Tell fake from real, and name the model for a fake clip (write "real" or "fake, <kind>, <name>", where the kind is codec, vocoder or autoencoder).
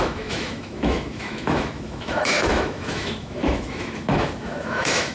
fake, autoencoder, DAC-VAE